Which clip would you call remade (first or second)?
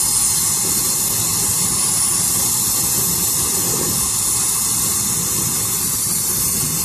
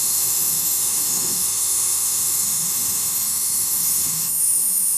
second